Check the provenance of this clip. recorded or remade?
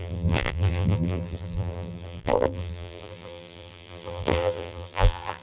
remade